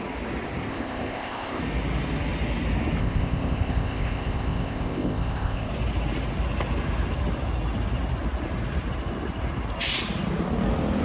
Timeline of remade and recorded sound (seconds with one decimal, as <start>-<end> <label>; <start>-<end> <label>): 0.0-0.7 recorded; 0.7-1.6 remade; 1.6-3.0 recorded; 3.0-5.7 remade; 5.7-11.0 recorded